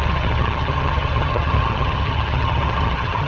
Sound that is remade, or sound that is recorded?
remade